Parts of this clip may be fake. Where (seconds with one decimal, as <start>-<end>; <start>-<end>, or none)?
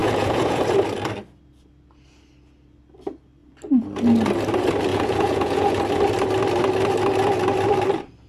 0.0-0.6; 4.9-5.8